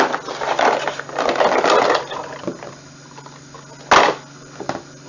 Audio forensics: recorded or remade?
recorded